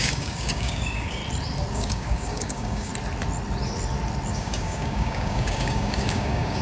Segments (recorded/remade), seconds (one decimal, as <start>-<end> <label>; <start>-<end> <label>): 0.0-1.2 remade; 1.2-1.7 recorded; 1.7-2.9 remade; 2.9-4.3 recorded; 4.3-6.6 remade

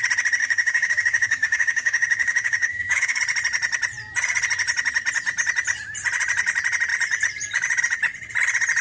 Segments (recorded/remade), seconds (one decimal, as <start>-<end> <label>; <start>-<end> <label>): 0.0-0.4 recorded; 0.4-3.2 remade; 3.2-8.8 recorded

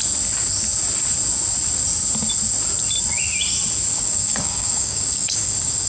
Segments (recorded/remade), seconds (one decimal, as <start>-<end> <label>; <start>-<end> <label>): 0.0-3.9 recorded; 3.9-5.9 remade

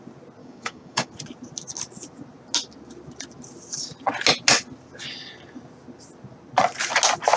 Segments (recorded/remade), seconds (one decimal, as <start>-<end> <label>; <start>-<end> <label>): 0.0-0.4 recorded; 0.4-1.1 remade; 1.1-7.4 recorded